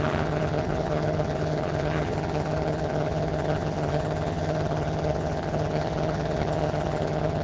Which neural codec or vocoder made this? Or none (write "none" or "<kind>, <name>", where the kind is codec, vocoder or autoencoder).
vocoder, HiFi-GAN